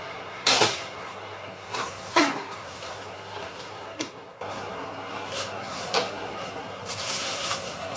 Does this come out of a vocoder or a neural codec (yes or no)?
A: yes